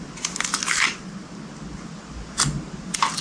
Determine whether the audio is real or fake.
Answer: real